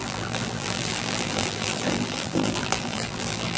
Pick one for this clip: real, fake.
fake